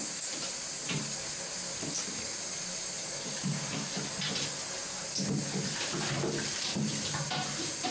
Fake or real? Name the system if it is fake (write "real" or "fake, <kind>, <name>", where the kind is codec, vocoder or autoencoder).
real